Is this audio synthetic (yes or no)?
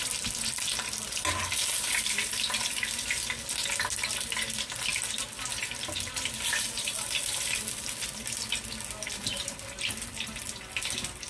no